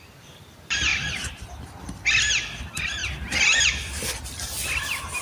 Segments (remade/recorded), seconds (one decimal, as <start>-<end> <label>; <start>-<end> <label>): 0.0-0.9 recorded; 0.9-1.6 remade; 1.6-5.2 recorded